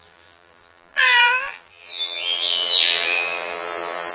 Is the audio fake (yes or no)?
yes